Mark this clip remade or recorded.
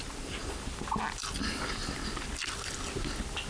recorded